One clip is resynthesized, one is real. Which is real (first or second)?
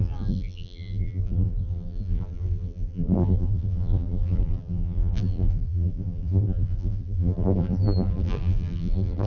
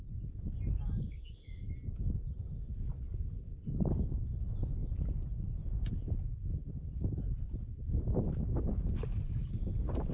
second